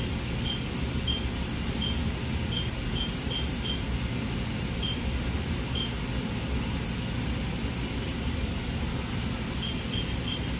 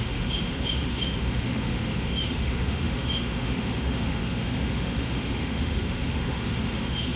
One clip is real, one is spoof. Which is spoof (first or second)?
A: second